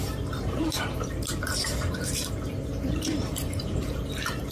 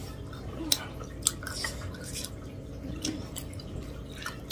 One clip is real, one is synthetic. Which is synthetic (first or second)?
first